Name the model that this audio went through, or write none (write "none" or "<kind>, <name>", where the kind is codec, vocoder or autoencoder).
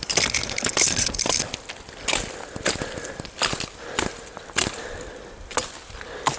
none